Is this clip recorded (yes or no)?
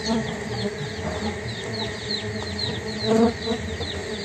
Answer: yes